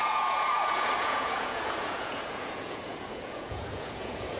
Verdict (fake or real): fake